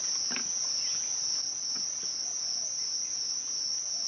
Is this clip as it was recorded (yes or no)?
yes